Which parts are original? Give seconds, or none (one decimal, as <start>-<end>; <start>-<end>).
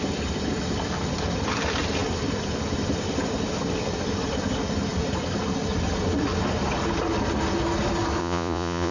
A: 0.0-8.2